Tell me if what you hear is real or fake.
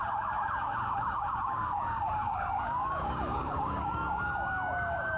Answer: fake